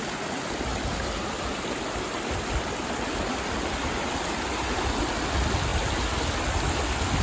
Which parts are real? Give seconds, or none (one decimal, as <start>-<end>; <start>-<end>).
0.0-7.2